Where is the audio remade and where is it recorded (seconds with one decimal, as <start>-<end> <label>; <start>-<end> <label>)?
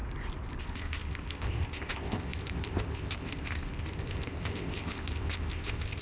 0.0-0.6 recorded; 0.6-6.0 remade